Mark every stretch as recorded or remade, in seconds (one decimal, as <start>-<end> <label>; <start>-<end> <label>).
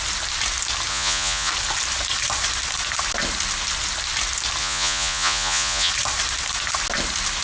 0.0-0.9 recorded; 0.9-1.5 remade; 1.5-4.6 recorded; 4.6-5.9 remade; 5.9-7.4 recorded